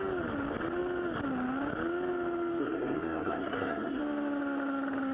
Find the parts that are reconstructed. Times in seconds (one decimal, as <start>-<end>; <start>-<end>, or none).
2.6-4.0